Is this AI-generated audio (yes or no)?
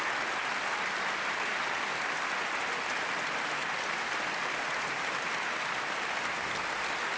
no